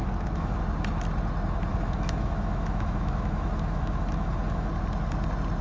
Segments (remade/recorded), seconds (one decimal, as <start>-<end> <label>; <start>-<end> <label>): 0.0-0.6 remade; 0.6-1.7 recorded; 1.7-4.7 remade; 4.7-5.6 recorded